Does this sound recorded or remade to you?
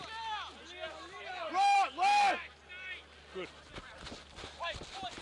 recorded